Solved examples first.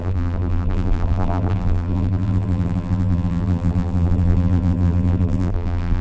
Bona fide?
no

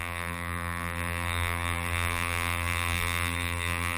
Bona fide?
no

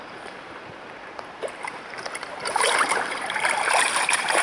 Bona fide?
no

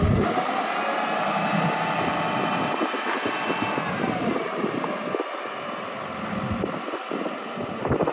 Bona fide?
yes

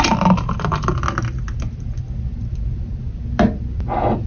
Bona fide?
yes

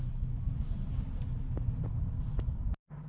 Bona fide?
yes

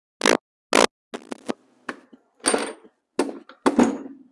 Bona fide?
yes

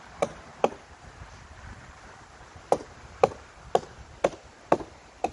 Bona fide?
no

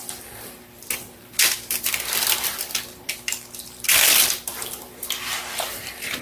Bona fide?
no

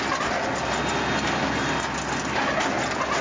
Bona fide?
yes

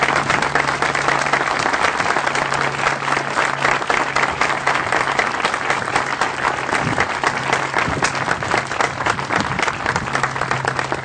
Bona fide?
yes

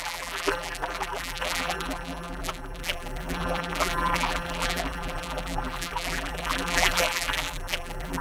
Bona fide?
no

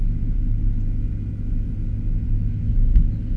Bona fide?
yes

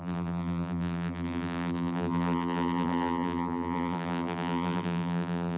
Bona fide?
no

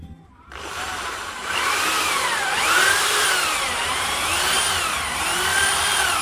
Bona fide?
no